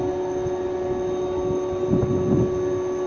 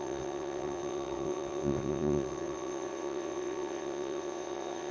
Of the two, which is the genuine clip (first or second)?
first